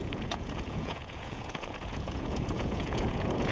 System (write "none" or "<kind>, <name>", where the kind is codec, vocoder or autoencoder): vocoder, Vocos